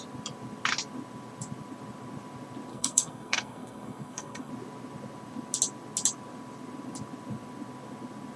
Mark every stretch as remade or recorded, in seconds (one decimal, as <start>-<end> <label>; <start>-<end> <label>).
0.0-2.7 recorded; 2.7-4.5 remade; 4.5-8.4 recorded